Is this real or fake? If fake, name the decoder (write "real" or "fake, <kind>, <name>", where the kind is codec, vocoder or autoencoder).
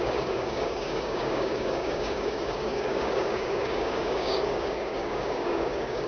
fake, codec, DAC